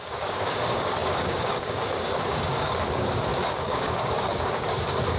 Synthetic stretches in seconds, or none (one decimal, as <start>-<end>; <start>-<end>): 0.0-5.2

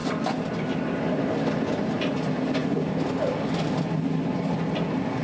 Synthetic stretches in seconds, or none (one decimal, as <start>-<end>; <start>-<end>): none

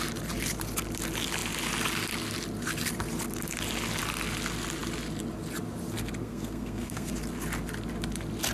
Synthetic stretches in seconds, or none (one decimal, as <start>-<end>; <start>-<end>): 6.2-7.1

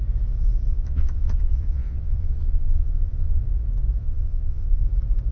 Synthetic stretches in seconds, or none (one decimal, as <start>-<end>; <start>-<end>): 0.7-3.4; 4.0-4.8

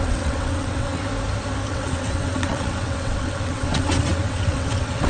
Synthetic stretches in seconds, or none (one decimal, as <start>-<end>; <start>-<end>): 0.0-1.0; 1.7-5.1

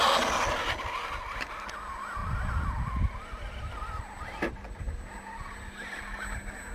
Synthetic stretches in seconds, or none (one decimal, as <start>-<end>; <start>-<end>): none